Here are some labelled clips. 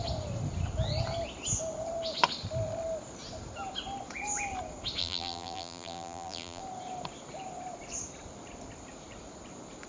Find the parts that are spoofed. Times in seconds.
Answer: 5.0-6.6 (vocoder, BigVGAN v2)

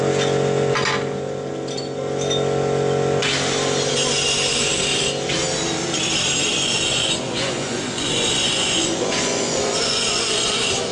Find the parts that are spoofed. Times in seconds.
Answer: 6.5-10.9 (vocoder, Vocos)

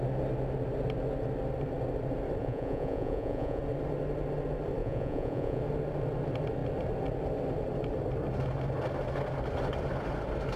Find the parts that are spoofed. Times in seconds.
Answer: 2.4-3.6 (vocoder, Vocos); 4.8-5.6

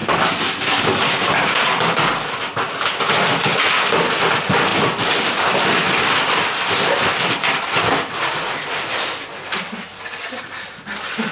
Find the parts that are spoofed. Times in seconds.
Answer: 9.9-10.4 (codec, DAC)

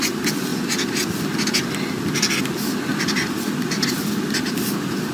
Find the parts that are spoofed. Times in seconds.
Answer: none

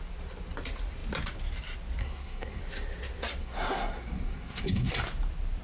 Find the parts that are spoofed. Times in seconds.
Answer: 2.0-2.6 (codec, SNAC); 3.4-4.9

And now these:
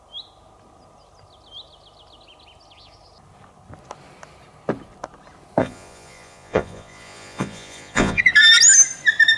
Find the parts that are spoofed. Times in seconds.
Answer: 5.6-8.2 (vocoder, Vocos)